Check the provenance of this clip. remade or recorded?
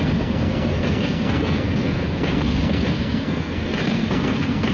remade